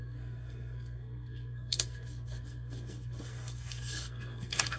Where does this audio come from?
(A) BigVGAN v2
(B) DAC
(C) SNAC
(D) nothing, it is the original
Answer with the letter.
C